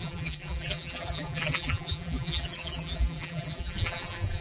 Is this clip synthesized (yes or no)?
yes